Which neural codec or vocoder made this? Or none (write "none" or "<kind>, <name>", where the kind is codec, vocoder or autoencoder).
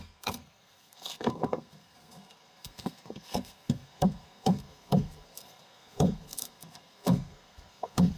codec, SNAC